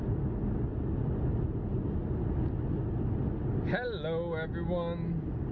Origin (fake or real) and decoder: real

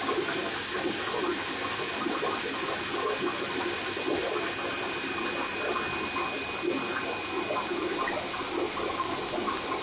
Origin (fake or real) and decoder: real